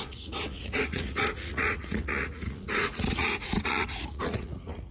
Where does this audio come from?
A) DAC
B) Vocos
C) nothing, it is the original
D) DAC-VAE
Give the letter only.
B